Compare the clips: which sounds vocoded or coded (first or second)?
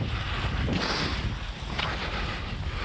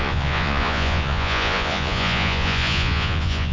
second